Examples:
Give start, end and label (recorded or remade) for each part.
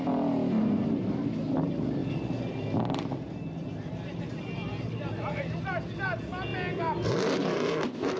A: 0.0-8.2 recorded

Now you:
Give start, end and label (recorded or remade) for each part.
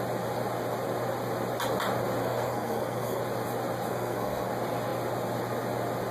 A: 0.0-2.2 recorded; 2.2-3.2 remade; 3.2-3.9 recorded; 3.9-4.5 remade; 4.5-6.1 recorded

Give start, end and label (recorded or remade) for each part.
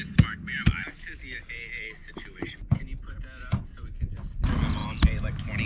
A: 0.0-5.7 recorded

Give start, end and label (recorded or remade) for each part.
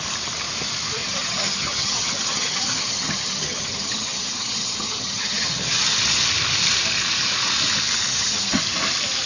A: 0.0-1.0 recorded; 1.0-6.0 remade; 6.0-8.1 recorded; 8.1-8.6 remade; 8.6-9.3 recorded